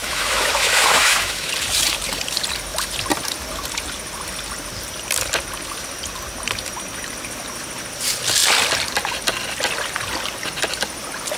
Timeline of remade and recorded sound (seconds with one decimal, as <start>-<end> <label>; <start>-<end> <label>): 0.0-1.5 remade; 1.5-11.4 recorded